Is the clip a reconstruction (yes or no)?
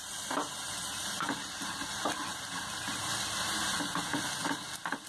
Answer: no